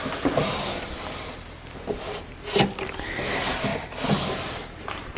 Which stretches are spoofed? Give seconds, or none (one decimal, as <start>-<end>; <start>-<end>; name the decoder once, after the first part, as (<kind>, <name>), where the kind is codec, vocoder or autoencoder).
none

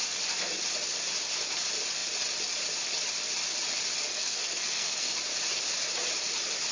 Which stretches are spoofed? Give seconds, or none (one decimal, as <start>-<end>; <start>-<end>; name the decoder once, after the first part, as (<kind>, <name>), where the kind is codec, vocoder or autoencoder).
4.1-5.2 (codec, SNAC)

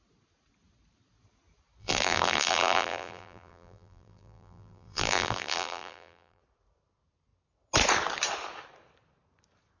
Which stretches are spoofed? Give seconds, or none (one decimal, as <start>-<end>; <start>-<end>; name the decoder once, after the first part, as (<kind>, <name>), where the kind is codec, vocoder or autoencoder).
1.8-6.4 (vocoder, BigVGAN v2)

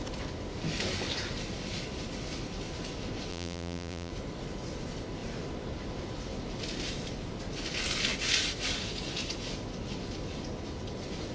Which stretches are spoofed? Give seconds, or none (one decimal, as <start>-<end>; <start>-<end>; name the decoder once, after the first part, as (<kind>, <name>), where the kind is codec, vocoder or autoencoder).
3.3-4.1 (vocoder, BigVGAN v2)

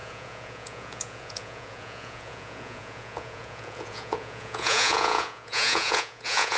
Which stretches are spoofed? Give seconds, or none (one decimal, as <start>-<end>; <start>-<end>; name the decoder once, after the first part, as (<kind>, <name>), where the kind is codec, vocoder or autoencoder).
0.0-6.6 (vocoder, Vocos)

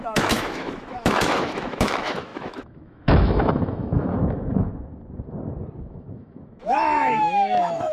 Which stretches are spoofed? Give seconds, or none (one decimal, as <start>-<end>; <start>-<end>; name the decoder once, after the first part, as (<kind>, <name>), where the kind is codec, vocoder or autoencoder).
0.0-4.7 (autoencoder, DAC-VAE); 5.8-7.9